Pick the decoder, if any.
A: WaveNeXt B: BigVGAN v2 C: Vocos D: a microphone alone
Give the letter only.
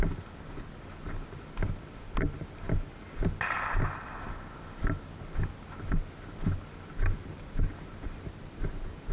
D